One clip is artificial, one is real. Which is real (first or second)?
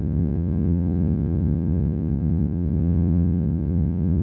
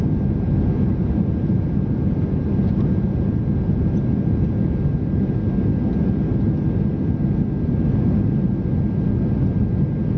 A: second